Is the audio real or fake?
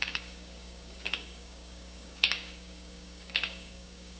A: fake